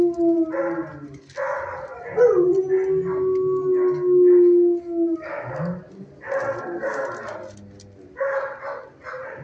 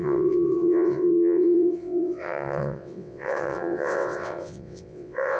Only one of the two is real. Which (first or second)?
first